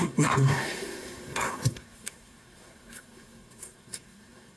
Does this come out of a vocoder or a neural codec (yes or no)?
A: yes